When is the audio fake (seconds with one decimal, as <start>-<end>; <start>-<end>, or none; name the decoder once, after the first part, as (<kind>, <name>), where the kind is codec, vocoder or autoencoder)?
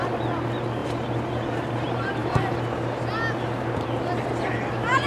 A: none